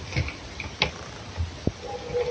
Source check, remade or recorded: remade